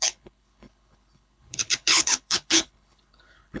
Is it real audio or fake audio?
fake